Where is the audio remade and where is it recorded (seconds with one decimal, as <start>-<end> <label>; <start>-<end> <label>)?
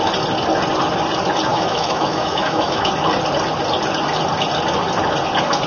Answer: 0.0-1.5 recorded; 1.5-2.9 remade; 2.9-5.7 recorded